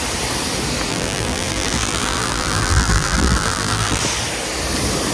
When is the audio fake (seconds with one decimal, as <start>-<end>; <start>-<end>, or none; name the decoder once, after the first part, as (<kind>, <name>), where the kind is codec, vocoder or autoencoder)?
0.9-4.0 (vocoder, BigVGAN v2)